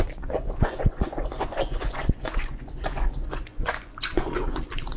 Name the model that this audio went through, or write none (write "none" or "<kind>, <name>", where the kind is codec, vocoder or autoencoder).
vocoder, Vocos